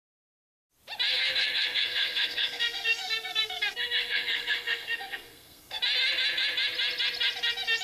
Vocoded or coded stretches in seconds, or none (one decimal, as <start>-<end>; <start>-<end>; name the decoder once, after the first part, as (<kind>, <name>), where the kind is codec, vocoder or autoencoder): 1.1-5.8 (codec, SNAC)